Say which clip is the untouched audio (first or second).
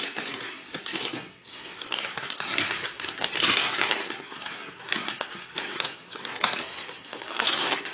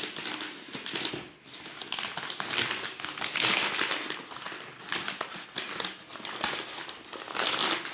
second